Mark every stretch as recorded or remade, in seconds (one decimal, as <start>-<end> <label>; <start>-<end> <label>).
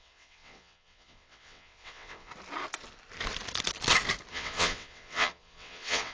0.0-2.3 remade; 2.3-4.3 recorded; 4.3-6.1 remade